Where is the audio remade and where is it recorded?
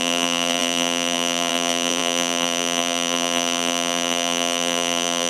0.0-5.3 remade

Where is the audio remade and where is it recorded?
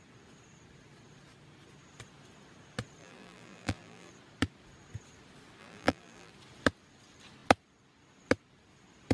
0.0-3.0 recorded; 3.0-4.1 remade; 4.1-5.6 recorded; 5.6-6.3 remade; 6.3-9.1 recorded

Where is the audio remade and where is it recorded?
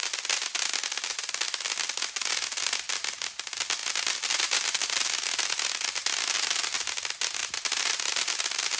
0.0-3.8 recorded; 3.8-5.8 remade; 5.8-7.4 recorded; 7.4-8.8 remade